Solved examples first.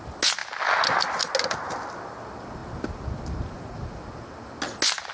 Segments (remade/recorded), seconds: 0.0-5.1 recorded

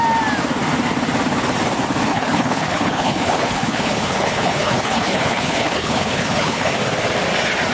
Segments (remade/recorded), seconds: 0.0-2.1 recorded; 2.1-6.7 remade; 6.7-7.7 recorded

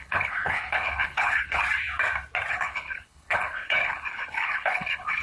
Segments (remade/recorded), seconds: 0.0-1.6 remade; 1.6-2.5 recorded; 2.5-5.2 remade

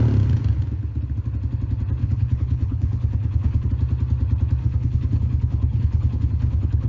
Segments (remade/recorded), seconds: 0.0-2.0 recorded; 2.0-3.7 remade; 3.7-4.6 recorded; 4.6-6.9 remade

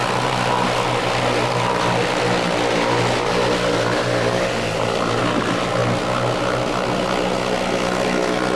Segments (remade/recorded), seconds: 0.0-8.6 recorded

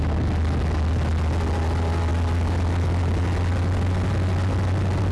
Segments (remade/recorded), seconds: 0.0-5.1 recorded